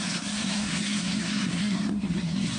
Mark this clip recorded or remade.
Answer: remade